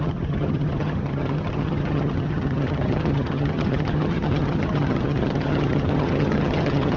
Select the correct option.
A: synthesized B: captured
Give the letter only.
A